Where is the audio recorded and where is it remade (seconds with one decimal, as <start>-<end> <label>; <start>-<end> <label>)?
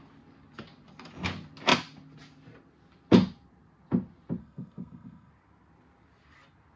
0.0-4.4 recorded; 4.4-5.3 remade; 5.3-6.8 recorded